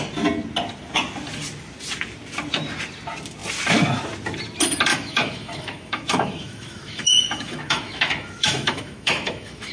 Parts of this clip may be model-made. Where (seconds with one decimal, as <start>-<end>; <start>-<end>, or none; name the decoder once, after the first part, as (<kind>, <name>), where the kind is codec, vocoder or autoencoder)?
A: 4.9-9.7 (autoencoder, DAC-VAE)